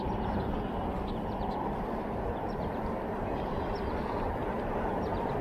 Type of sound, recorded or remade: recorded